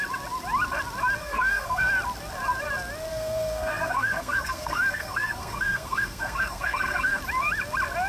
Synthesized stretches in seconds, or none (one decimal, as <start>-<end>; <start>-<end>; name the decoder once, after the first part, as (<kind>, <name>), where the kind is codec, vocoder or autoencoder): 1.2-1.9 (codec, SNAC); 3.1-7.2